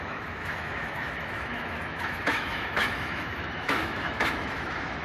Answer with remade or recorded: remade